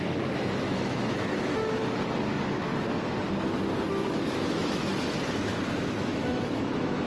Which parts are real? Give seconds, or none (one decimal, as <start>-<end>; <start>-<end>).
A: 1.8-2.3; 2.7-3.9; 4.9-5.7